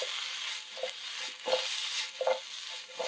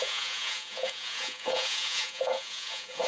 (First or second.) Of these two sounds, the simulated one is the second